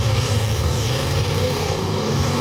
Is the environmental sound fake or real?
fake